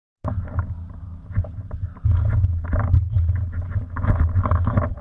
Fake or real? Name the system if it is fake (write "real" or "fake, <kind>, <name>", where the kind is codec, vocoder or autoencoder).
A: real